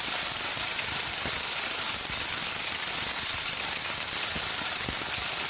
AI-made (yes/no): yes